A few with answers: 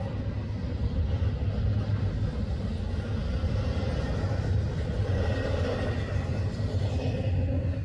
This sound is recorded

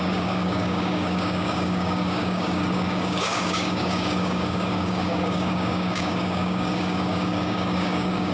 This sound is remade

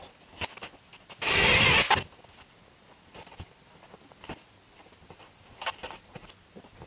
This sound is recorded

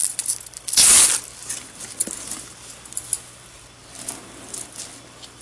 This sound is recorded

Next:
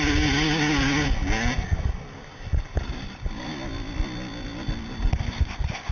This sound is recorded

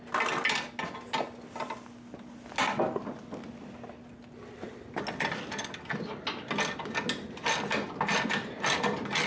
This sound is recorded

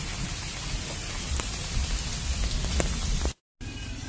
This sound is recorded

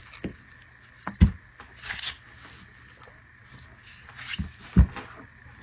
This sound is recorded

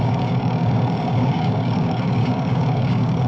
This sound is remade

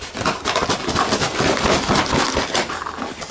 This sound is recorded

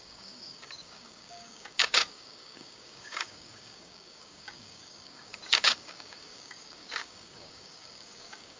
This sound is remade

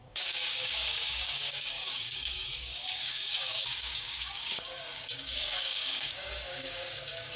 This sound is remade